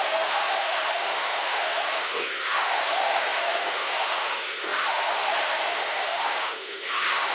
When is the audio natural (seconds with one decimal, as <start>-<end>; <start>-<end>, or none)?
none